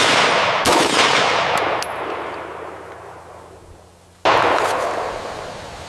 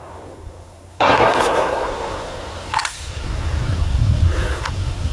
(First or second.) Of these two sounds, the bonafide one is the first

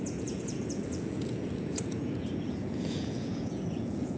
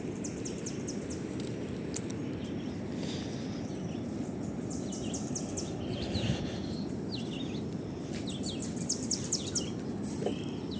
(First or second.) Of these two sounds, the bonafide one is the second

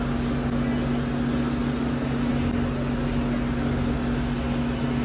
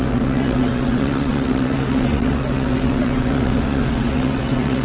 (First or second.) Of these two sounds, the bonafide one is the first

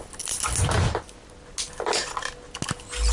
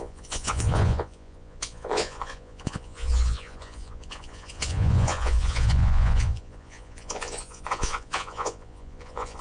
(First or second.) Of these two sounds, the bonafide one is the first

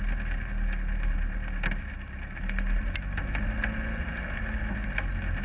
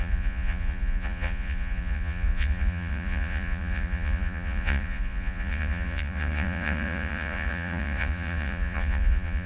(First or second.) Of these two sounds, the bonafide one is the first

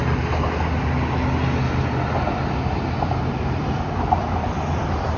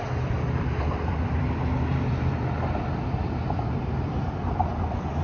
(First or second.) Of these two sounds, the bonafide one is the first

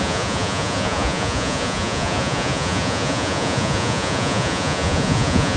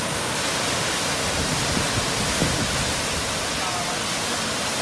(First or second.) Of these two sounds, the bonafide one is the second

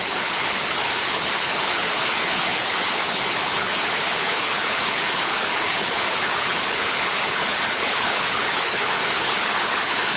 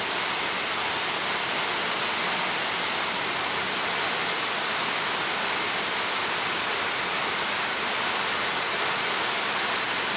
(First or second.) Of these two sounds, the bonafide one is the second